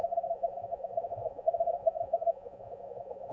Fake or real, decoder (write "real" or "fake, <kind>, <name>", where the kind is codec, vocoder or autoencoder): fake, vocoder, Vocos